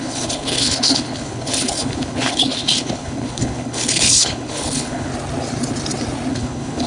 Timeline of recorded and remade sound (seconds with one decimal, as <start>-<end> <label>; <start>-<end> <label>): 0.0-5.1 remade; 5.1-6.3 recorded; 6.3-6.9 remade